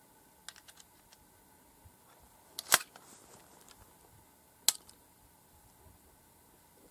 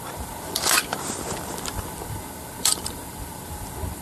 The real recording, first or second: first